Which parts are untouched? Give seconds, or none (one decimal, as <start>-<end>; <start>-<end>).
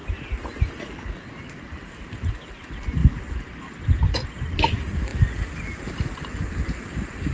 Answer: 0.0-7.3